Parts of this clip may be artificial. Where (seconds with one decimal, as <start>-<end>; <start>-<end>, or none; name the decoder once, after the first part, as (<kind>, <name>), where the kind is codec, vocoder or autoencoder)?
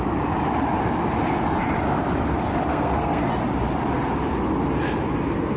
2.7-3.2 (codec, SNAC)